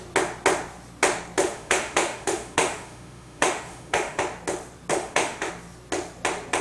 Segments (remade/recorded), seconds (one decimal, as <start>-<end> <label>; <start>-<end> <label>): 0.0-1.4 recorded; 1.4-4.2 remade; 4.2-4.9 recorded; 4.9-5.5 remade; 5.5-6.6 recorded